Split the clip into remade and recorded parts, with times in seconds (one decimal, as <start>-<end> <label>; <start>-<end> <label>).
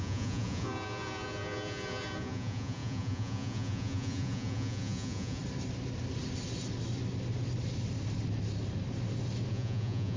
0.0-5.4 remade; 5.4-9.5 recorded; 9.5-10.2 remade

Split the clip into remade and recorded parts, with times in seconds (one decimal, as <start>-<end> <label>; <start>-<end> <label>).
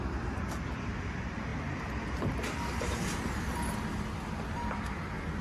0.0-5.4 recorded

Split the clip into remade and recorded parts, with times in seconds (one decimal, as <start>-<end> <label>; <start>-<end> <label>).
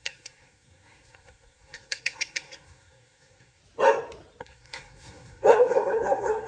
0.0-3.6 remade; 3.6-4.4 recorded; 4.4-6.5 remade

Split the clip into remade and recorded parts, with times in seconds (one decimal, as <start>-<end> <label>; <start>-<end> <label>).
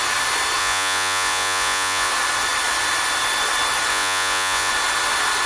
0.0-0.6 recorded; 0.6-2.1 remade; 2.1-3.9 recorded; 3.9-4.7 remade; 4.7-5.5 recorded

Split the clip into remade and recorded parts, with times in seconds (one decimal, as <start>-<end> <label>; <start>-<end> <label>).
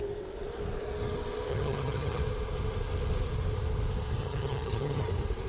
0.0-1.5 recorded; 1.5-2.2 remade; 2.2-4.2 recorded; 4.2-5.1 remade; 5.1-5.5 recorded